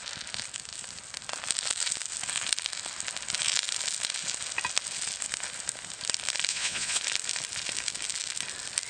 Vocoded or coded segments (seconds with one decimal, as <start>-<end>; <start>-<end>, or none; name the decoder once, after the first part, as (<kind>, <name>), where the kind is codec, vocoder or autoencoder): 6.5-7.0 (vocoder, Vocos)